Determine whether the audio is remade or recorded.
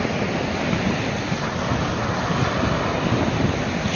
recorded